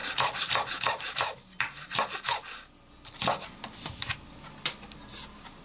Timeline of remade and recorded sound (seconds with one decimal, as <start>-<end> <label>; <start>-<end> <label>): 0.0-5.6 recorded